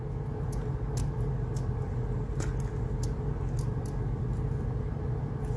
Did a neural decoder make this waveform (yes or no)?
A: no